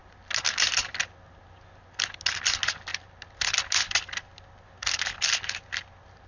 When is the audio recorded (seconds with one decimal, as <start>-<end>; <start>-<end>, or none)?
0.0-6.3